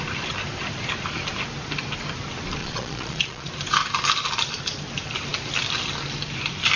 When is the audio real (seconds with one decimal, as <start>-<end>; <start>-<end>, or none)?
0.0-2.6; 3.5-6.8